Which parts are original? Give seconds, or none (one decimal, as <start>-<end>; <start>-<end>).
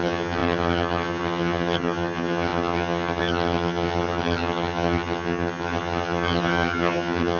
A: none